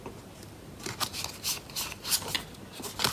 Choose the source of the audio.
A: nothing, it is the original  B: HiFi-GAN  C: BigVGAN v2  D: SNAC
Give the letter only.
A